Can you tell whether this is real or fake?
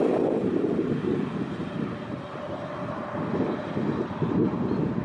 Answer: real